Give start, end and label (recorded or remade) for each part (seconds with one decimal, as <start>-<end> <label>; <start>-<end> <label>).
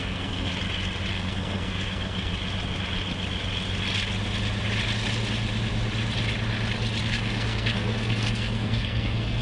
0.0-0.5 remade; 0.5-1.1 recorded; 1.1-2.3 remade; 2.3-7.0 recorded; 7.0-9.4 remade